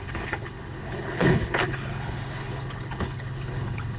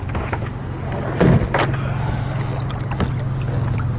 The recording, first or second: second